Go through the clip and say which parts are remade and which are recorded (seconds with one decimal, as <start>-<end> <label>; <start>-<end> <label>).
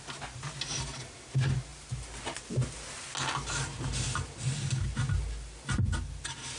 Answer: 0.0-6.6 recorded